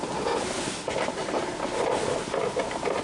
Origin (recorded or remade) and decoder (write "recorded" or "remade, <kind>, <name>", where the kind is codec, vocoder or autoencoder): recorded